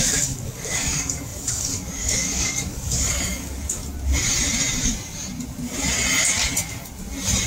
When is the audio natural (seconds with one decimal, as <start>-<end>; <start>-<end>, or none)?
3.8-7.5